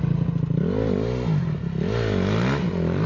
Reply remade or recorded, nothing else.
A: recorded